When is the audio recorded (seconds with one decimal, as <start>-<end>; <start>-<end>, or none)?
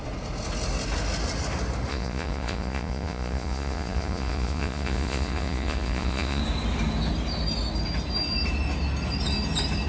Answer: 0.0-1.9; 6.4-9.9